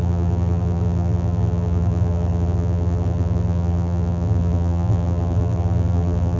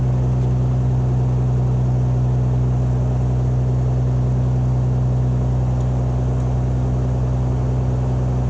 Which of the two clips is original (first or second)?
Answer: second